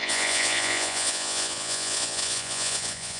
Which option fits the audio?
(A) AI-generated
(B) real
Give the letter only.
A